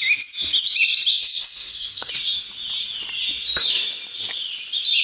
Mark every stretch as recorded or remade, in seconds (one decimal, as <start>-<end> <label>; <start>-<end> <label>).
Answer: 0.0-1.1 recorded; 1.1-2.1 remade; 2.1-5.0 recorded